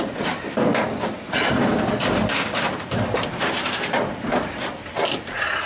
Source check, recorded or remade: recorded